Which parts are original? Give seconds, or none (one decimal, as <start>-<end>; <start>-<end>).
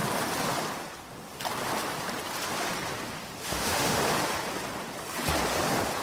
0.0-3.4; 4.0-6.0